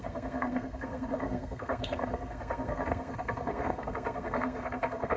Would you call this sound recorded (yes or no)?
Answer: no